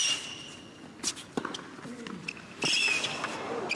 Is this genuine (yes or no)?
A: yes